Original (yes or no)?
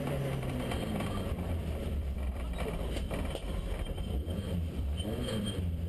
no